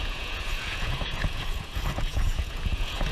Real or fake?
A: fake